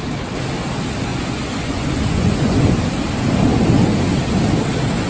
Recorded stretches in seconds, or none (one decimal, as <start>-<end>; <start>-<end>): 0.0-1.1; 2.6-5.1